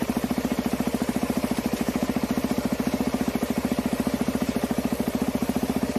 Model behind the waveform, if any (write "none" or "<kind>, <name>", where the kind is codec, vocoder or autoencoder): vocoder, BigVGAN v2